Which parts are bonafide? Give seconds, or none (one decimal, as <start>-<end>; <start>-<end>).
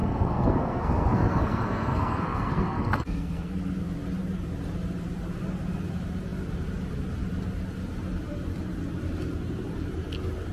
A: 3.5-10.5